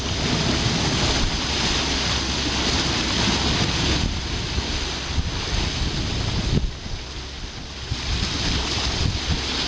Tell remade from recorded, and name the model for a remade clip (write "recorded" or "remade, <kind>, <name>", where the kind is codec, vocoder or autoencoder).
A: recorded